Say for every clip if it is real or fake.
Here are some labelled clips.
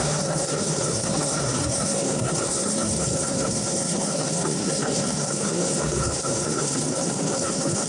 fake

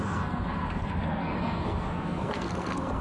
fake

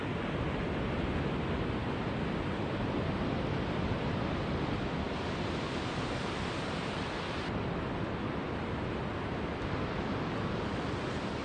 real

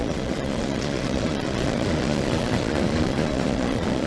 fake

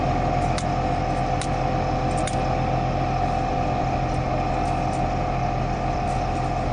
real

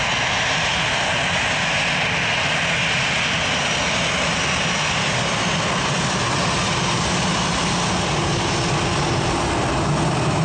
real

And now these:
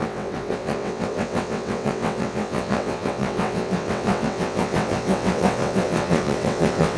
fake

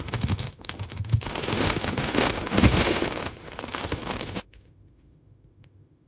fake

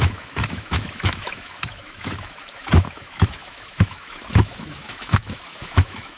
fake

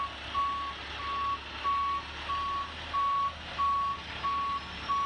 real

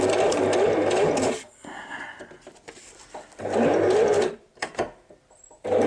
real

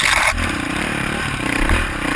fake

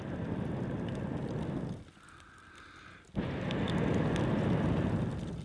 real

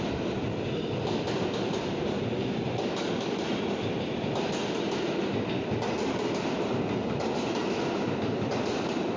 real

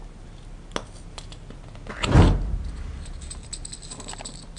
real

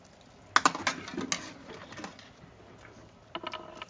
real